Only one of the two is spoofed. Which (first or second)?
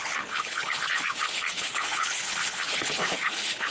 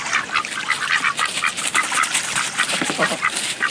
first